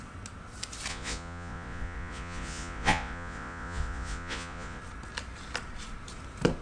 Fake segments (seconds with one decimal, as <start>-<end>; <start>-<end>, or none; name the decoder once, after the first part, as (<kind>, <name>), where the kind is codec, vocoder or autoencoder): 0.9-4.8 (vocoder, Vocos)